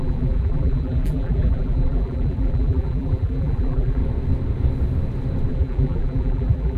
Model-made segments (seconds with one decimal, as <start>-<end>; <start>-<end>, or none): 0.0-4.0; 5.5-6.8